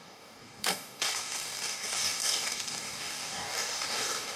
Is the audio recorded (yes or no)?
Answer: no